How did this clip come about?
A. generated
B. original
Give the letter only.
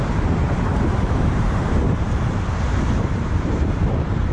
A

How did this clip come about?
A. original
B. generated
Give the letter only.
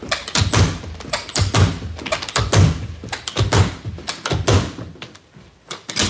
A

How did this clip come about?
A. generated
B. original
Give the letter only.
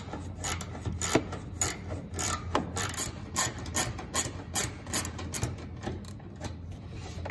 B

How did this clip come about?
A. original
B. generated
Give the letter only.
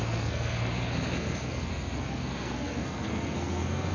B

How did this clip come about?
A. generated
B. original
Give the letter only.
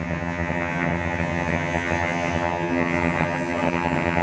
A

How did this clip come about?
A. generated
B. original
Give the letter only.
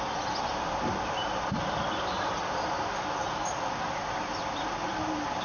B